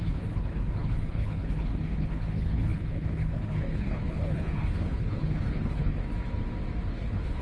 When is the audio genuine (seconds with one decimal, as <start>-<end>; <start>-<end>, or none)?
6.1-6.9